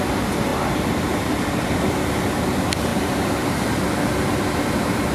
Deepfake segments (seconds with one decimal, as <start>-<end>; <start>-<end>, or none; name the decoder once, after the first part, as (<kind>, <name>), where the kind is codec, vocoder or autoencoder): 0.5-1.8 (vocoder, BigVGAN v2); 2.9-3.7